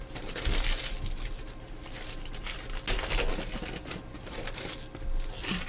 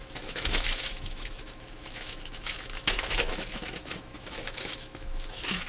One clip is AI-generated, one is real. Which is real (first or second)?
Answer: first